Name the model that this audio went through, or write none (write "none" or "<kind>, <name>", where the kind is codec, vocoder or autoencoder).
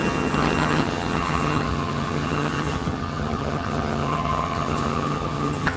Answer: vocoder, HiFi-GAN